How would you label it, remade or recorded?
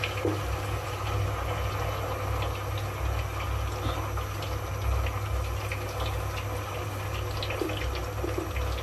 recorded